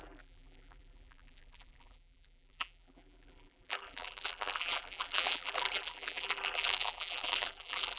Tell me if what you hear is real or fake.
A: fake